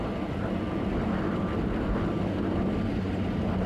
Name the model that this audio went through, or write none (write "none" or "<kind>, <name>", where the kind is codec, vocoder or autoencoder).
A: none